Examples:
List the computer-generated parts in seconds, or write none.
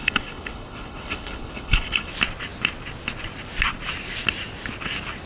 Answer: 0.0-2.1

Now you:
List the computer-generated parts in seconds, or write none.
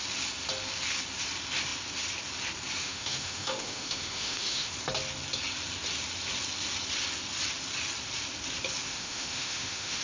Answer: 2.8-4.7; 8.9-10.0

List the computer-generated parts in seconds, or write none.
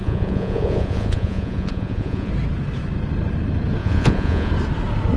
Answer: 0.0-2.3; 3.8-4.5